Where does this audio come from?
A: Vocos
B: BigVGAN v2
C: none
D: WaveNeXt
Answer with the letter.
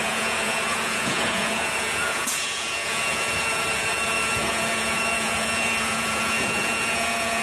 A